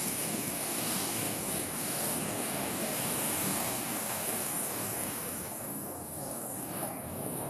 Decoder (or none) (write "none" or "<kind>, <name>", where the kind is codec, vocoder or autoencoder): codec, DAC